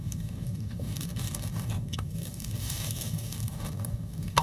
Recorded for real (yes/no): no